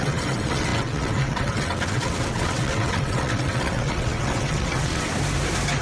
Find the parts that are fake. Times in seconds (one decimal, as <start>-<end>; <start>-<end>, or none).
0.0-5.1

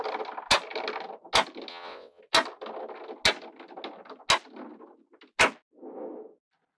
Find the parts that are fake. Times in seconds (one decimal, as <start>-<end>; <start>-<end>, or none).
1.7-2.2

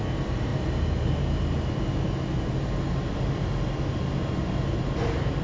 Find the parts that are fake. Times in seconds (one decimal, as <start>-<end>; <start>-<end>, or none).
none